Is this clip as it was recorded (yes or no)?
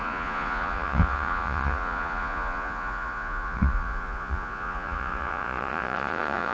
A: no